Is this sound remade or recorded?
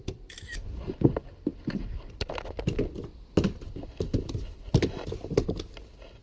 recorded